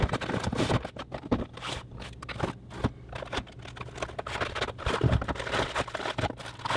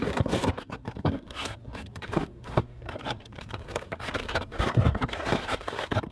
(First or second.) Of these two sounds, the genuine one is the first